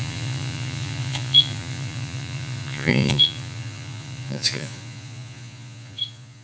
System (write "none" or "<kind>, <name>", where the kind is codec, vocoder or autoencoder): vocoder, Vocos